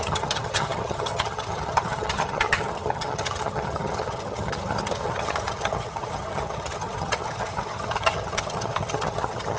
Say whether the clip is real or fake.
fake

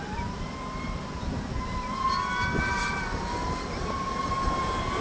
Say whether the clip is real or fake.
real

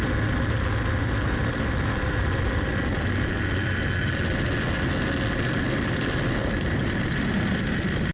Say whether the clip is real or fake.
real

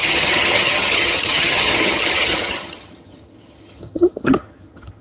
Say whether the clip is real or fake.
fake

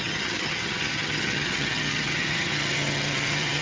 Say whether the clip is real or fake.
fake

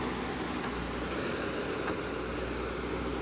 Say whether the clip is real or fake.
real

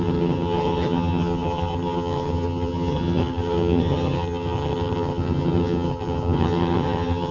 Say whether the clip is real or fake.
fake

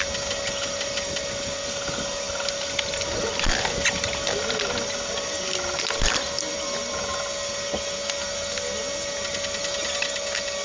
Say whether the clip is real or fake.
real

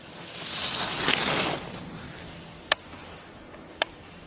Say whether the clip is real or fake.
real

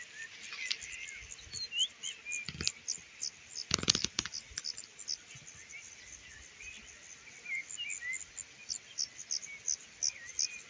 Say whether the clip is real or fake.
real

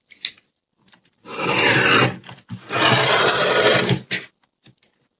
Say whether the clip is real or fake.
real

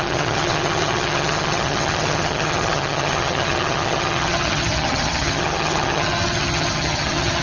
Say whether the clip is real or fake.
fake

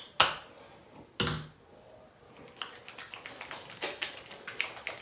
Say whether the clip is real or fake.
real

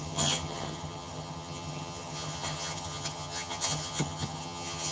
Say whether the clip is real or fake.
fake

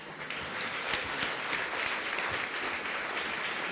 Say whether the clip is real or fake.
real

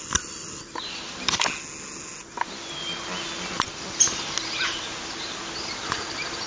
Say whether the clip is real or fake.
real